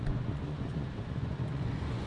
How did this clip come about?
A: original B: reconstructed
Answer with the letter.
B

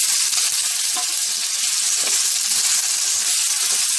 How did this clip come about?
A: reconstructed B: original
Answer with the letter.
B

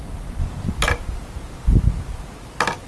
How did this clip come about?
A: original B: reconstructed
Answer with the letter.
A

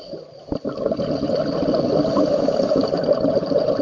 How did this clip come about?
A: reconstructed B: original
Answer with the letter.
B